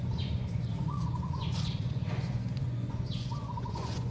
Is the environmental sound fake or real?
fake